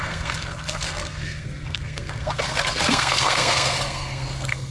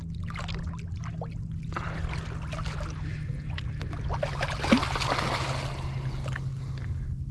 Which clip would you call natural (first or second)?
second